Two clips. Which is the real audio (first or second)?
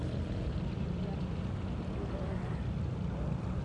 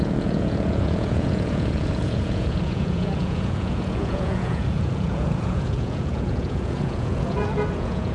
first